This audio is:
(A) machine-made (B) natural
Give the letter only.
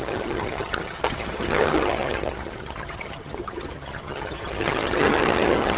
A